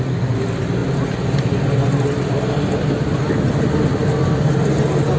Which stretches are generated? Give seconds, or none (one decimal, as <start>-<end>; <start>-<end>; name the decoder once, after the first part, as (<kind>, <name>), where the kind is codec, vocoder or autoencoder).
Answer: none